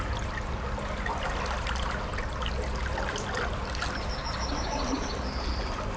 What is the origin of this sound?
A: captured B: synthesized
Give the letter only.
A